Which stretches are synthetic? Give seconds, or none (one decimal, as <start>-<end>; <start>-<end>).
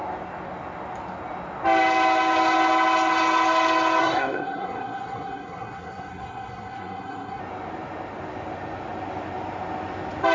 4.0-7.4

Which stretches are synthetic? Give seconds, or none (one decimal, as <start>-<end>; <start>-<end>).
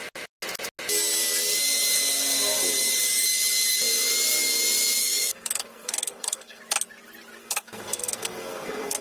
5.0-6.6; 7.4-9.0